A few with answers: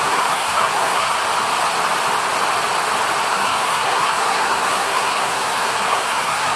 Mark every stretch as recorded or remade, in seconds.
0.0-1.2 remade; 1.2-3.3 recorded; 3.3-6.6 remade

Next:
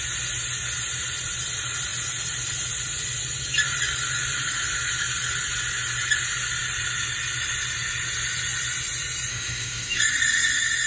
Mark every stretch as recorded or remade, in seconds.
0.0-9.3 recorded; 9.3-10.0 remade; 10.0-10.9 recorded